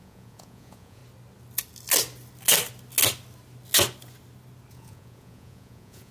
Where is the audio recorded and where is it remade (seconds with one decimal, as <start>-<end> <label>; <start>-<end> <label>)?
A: 0.0-1.0 remade; 1.0-4.7 recorded; 4.7-6.1 remade